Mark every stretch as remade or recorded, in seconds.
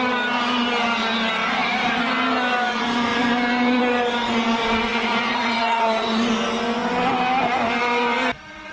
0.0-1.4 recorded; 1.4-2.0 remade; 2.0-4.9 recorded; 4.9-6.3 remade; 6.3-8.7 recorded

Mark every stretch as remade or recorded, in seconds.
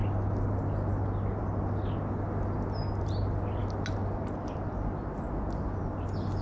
0.0-6.4 recorded